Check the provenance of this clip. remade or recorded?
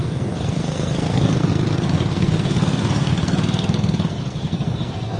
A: remade